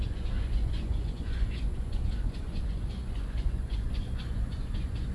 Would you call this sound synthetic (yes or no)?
yes